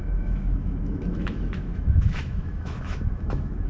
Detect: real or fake fake